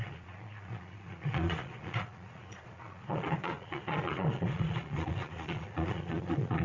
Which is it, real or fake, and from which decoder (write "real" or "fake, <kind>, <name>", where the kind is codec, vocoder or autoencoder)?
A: fake, vocoder, Vocos